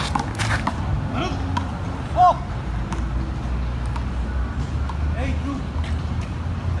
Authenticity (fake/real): real